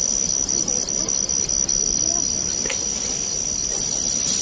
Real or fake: real